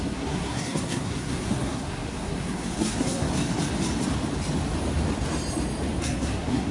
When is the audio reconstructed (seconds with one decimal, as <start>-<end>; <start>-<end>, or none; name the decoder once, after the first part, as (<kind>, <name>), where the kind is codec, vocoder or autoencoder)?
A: 0.0-3.3 (codec, SNAC); 6.0-6.7

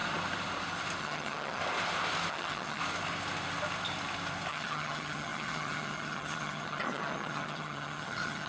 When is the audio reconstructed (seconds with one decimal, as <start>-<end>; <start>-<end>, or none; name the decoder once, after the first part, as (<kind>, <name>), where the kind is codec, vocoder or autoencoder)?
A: 1.0-1.6 (vocoder, HiFi-GAN); 2.3-2.8; 4.5-8.5